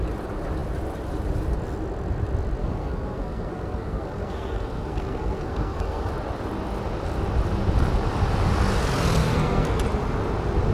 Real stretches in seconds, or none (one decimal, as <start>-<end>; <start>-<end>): 0.0-2.6; 6.1-9.2; 9.8-10.7